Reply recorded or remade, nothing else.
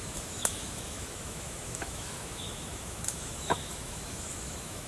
remade